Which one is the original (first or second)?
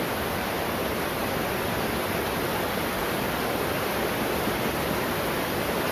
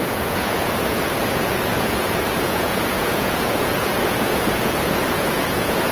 first